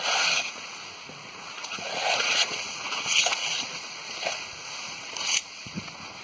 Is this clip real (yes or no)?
no